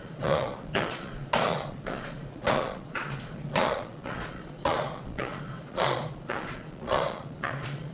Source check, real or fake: fake